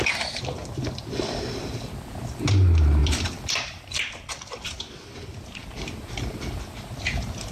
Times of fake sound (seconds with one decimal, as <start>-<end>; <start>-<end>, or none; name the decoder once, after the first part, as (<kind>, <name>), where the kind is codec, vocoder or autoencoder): 0.6-1.3 (vocoder, BigVGAN v2); 3.0-7.5